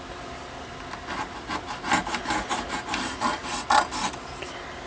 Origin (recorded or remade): recorded